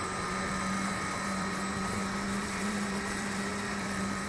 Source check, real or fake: fake